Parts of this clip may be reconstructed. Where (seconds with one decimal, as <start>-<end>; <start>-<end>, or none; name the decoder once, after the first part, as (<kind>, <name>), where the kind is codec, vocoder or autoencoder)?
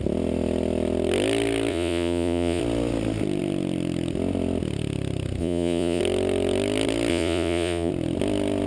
1.7-2.6 (vocoder, Vocos); 5.4-6.0; 7.1-7.9